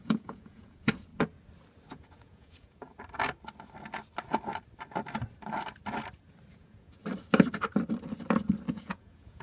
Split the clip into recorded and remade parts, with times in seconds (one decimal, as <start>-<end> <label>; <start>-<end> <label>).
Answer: 0.0-1.1 remade; 1.1-1.9 recorded; 1.9-2.9 remade; 2.9-6.5 recorded; 6.5-7.0 remade; 7.0-8.7 recorded; 8.7-9.4 remade